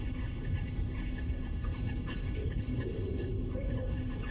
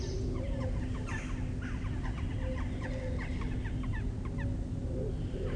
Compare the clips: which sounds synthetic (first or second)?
first